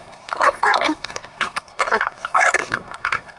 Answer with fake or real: fake